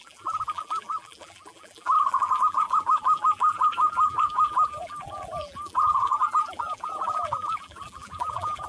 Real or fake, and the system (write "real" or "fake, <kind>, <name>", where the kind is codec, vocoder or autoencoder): fake, vocoder, BigVGAN v2